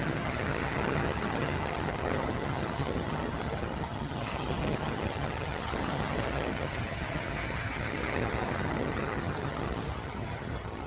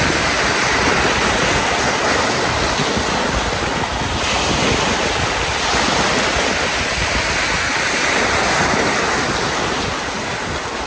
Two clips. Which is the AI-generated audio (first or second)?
first